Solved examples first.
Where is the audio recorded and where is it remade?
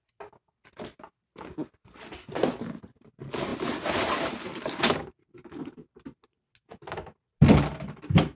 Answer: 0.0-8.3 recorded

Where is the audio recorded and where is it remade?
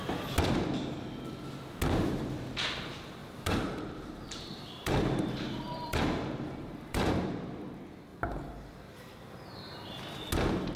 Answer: 0.0-3.2 recorded; 3.2-7.1 remade; 7.1-8.1 recorded; 8.1-9.9 remade; 9.9-10.8 recorded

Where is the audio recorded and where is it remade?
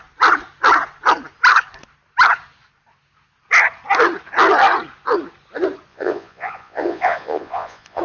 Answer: 0.0-5.9 recorded; 5.9-8.0 remade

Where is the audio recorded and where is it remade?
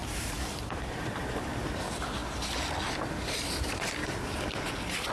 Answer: 0.0-2.2 remade; 2.2-3.1 recorded; 3.1-5.1 remade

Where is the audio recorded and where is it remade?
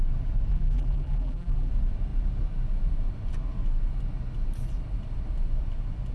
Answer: 0.0-0.5 recorded; 0.5-1.7 remade; 1.7-6.1 recorded